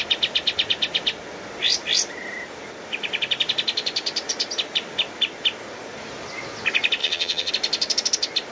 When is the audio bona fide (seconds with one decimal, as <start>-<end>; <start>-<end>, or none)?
0.0-7.0; 7.5-8.5